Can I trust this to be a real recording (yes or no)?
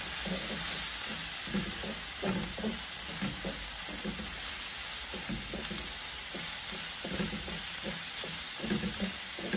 yes